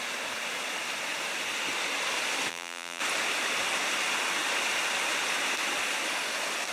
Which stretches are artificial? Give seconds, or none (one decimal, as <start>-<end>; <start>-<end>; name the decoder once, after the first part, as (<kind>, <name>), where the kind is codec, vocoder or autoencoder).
2.5-3.0 (vocoder, BigVGAN v2)